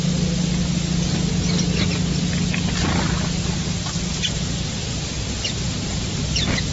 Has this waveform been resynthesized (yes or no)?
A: no